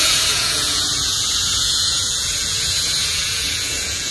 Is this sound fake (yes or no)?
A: yes